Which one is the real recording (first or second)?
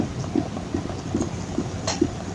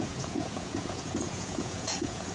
first